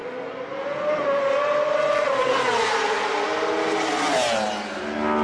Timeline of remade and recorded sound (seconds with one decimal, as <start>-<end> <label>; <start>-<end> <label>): 0.0-4.1 recorded; 4.1-4.8 remade; 4.8-5.2 recorded